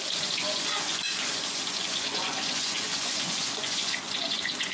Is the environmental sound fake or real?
fake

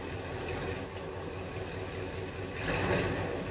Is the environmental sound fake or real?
real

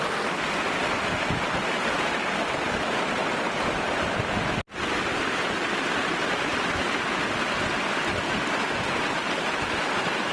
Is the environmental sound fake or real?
real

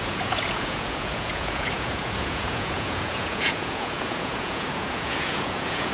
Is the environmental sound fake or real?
fake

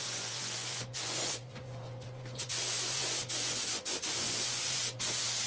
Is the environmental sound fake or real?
fake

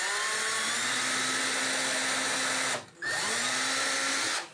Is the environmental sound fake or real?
real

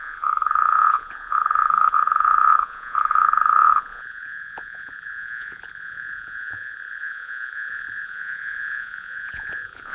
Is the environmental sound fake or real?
fake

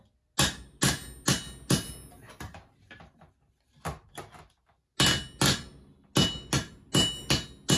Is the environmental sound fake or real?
real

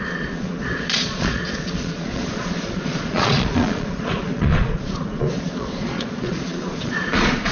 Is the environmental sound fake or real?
fake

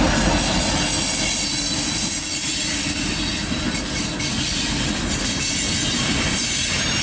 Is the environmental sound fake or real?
real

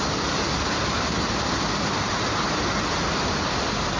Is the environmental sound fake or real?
real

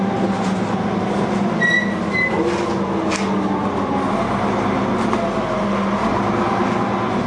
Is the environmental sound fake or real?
real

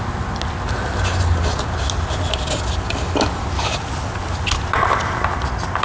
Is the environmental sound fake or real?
real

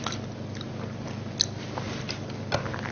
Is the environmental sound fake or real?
real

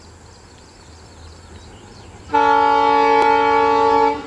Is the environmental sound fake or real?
real